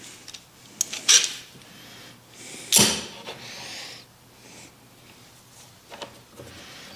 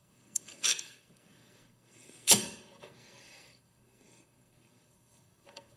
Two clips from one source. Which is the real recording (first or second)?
first